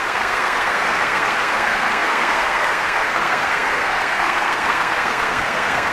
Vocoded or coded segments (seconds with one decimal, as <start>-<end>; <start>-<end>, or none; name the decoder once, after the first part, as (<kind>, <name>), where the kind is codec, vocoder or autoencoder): 0.0-5.9 (codec, SNAC)